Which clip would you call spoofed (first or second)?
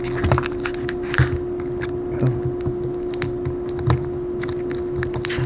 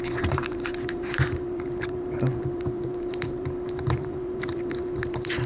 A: second